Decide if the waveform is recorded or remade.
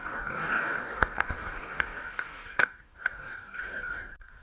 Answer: remade